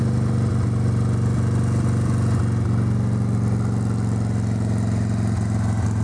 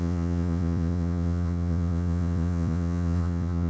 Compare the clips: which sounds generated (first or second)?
second